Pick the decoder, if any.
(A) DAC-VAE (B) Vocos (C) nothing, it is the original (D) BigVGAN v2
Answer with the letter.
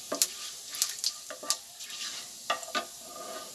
C